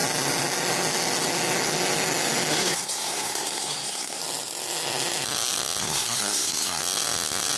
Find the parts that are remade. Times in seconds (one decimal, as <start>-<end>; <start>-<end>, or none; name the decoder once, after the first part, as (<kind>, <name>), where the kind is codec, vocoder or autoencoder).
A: 2.5-4.2 (codec, SNAC); 5.8-6.8